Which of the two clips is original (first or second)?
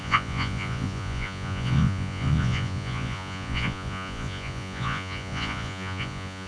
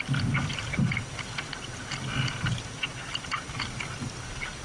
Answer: second